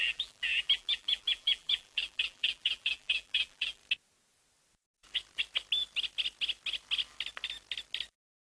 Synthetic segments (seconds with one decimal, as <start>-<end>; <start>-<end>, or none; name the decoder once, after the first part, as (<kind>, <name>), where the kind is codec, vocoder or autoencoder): 0.0-3.8 (vocoder, BigVGAN v2); 8.1-8.5